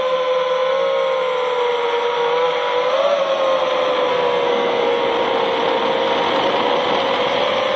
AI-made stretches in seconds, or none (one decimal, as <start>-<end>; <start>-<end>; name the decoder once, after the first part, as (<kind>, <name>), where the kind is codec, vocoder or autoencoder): 4.1-5.0 (codec, SNAC)